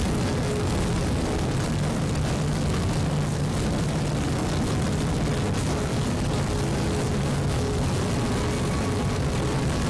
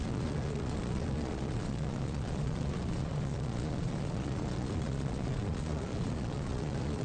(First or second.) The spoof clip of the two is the second